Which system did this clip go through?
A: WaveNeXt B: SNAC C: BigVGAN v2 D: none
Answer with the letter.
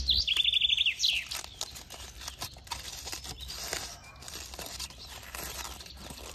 D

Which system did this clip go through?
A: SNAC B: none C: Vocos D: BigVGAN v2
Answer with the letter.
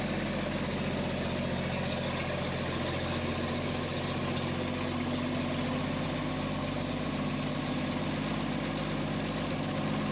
B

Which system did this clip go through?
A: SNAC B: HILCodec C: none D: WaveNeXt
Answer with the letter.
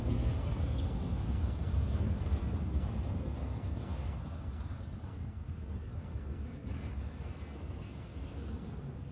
A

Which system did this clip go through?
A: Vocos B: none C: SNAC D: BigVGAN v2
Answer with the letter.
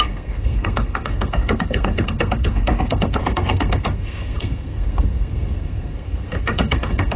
C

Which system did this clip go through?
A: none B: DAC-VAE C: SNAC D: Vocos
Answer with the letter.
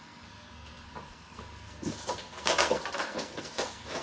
C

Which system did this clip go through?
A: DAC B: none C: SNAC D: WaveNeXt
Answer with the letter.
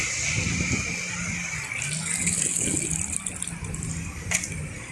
B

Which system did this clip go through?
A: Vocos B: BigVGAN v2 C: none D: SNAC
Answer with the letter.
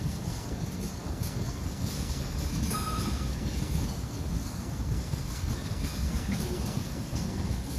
D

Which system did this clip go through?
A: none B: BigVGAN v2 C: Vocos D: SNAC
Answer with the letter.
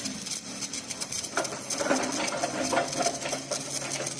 A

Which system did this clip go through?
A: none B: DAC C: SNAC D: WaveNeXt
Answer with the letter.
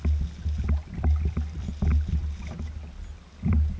A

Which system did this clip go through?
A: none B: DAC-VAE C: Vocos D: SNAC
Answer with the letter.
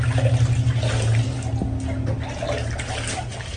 A